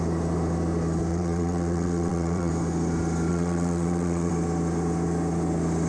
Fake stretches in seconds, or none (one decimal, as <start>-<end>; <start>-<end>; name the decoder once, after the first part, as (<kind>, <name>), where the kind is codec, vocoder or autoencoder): 1.1-2.5 (vocoder, WaveNeXt); 3.3-4.3